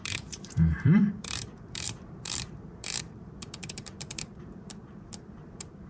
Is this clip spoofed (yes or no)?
yes